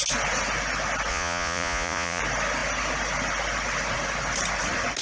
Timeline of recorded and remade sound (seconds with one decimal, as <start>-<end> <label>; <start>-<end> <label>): 0.0-1.1 recorded; 1.1-2.2 remade; 2.2-5.0 recorded